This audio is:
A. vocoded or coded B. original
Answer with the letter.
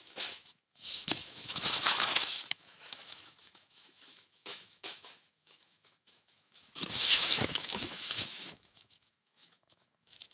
A